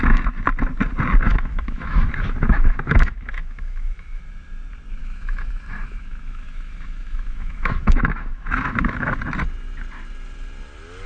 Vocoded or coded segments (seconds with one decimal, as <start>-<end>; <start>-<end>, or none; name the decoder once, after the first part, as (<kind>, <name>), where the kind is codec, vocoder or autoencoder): 1.3-4.2 (autoencoder, DAC-VAE); 5.0-9.1